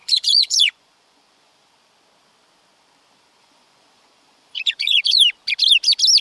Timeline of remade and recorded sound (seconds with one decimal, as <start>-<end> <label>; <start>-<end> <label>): 0.0-1.7 remade; 1.7-3.4 recorded; 3.4-5.2 remade; 5.2-6.2 recorded

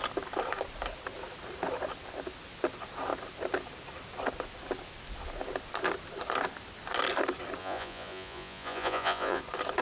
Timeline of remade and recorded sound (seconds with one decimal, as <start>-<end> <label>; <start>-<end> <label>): 0.0-7.6 recorded; 7.6-9.4 remade; 9.4-9.8 recorded